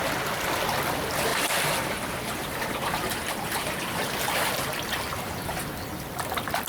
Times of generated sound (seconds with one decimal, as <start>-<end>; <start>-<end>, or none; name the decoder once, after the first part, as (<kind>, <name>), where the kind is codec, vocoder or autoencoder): none